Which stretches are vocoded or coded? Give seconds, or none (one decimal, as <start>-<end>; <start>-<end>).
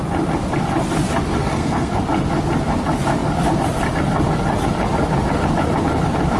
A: 1.4-2.0